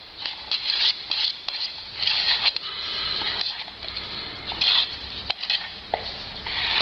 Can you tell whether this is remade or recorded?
recorded